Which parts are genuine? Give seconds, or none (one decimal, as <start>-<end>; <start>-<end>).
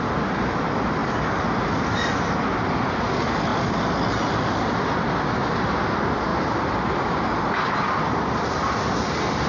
0.0-9.5